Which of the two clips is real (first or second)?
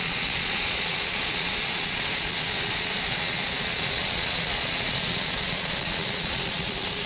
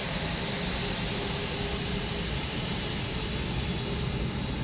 second